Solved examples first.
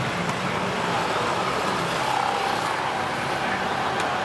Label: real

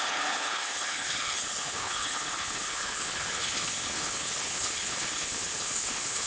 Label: fake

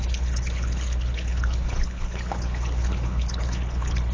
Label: fake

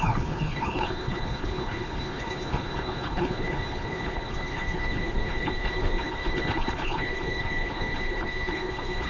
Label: fake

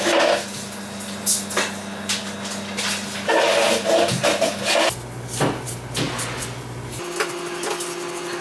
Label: real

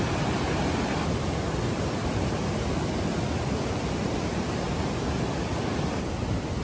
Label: real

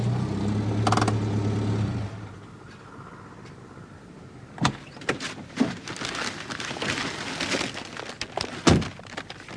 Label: real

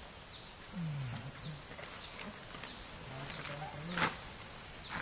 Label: real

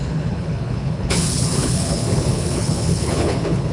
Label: fake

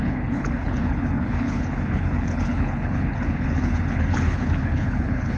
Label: fake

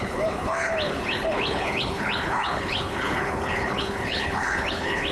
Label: fake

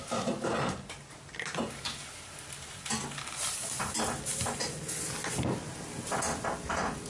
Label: real